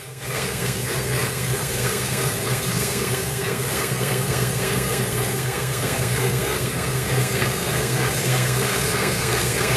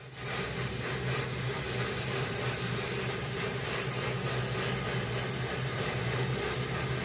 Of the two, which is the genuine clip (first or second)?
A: second